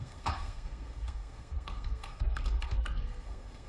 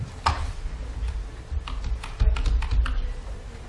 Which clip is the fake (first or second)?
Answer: first